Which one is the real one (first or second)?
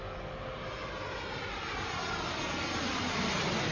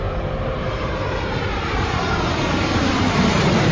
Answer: first